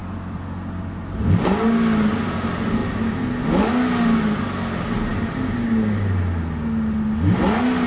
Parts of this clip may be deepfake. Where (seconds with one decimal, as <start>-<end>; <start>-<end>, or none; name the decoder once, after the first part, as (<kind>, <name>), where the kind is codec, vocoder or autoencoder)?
none